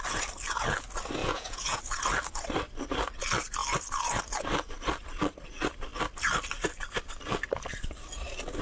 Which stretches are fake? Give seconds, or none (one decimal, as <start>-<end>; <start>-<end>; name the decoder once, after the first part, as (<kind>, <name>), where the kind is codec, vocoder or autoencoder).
1.2-1.8 (vocoder, Vocos)